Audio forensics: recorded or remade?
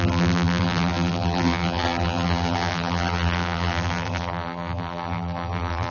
remade